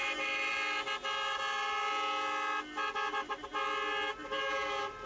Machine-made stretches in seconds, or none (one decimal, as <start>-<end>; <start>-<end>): none